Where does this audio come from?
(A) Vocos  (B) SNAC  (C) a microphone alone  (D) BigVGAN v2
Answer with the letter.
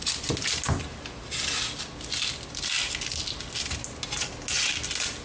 C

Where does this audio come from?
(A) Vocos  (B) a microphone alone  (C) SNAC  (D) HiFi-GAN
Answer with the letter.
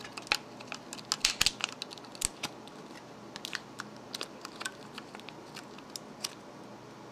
B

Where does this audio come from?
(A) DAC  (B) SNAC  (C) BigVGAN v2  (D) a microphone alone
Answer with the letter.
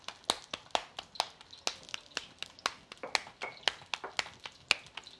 D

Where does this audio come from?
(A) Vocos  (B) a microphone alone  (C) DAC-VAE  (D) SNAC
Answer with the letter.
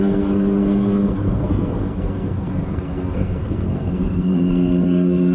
D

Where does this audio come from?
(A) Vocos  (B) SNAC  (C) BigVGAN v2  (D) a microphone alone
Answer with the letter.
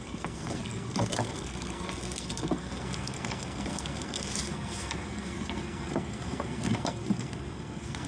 B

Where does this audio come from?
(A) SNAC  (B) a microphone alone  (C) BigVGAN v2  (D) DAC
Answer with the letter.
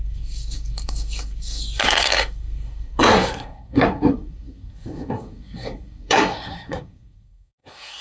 A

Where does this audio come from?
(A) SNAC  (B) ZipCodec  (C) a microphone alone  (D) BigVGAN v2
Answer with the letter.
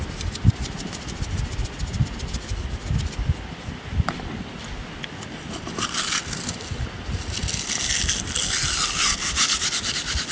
C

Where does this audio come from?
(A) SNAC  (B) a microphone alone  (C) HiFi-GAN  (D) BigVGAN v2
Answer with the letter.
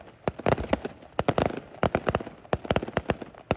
B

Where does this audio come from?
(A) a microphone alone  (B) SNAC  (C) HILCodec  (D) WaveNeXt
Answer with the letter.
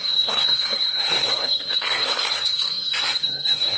B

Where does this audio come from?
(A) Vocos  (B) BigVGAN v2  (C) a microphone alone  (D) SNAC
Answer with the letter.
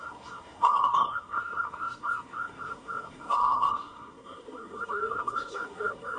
D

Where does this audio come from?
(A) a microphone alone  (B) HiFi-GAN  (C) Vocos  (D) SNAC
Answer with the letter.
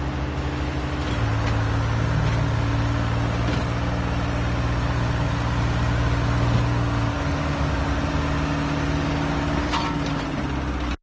A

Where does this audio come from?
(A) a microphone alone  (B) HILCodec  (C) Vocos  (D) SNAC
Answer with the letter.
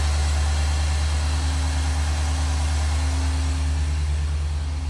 A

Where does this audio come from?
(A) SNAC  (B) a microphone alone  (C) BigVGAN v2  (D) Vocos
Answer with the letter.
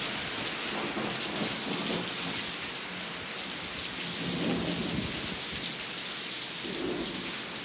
B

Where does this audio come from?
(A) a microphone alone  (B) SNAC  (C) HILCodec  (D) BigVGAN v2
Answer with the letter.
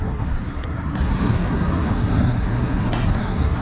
B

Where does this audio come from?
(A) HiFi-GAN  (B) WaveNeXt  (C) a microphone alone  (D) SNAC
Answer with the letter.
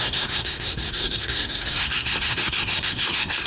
D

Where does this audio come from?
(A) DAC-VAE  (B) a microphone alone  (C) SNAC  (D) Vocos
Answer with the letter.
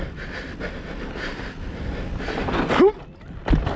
B